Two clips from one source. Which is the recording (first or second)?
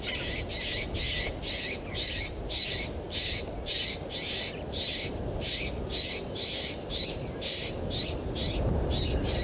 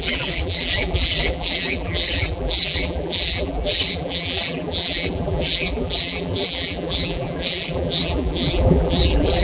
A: first